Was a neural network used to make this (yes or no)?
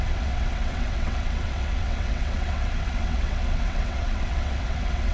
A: yes